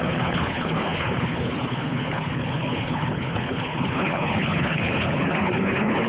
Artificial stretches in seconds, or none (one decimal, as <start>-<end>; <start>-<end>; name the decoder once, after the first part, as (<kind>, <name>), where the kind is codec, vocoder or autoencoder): 0.0-6.1 (codec, HILCodec)